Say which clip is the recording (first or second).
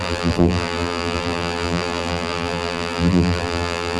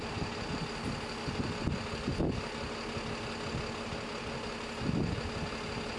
second